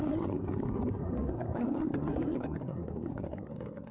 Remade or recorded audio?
remade